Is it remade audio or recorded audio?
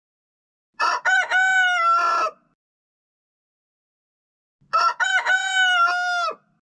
recorded